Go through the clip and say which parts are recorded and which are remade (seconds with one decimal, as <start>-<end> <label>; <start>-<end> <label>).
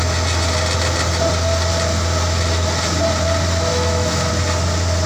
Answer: 0.0-3.7 recorded; 3.7-4.3 remade; 4.3-5.1 recorded